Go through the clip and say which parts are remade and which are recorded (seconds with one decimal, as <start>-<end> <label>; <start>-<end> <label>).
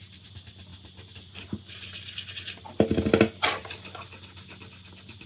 0.0-5.3 recorded